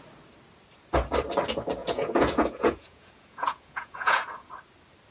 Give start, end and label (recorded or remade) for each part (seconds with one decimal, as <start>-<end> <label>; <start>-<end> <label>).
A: 0.0-1.8 recorded; 1.8-4.5 remade; 4.5-5.1 recorded